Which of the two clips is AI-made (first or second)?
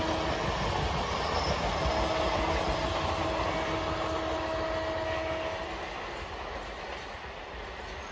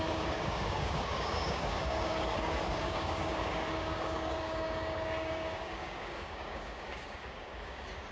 second